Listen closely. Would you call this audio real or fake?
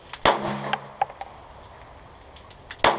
real